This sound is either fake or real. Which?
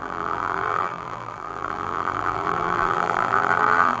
fake